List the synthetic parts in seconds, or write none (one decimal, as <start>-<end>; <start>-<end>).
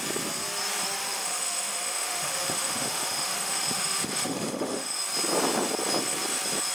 1.0-5.0